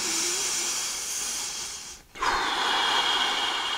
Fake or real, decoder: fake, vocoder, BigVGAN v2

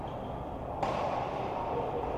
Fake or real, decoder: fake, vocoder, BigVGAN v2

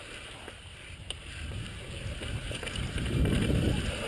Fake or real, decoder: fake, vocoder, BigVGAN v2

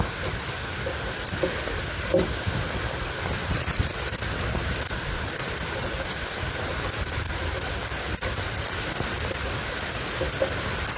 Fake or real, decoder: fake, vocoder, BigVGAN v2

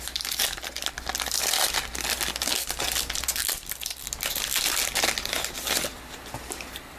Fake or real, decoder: real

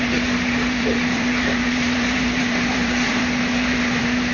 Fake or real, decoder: fake, vocoder, BigVGAN v2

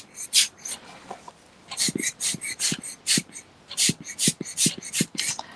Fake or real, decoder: real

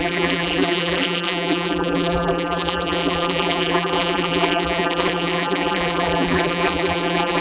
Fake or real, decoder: fake, vocoder, BigVGAN v2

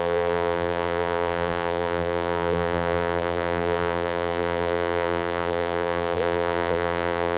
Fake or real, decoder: fake, vocoder, BigVGAN v2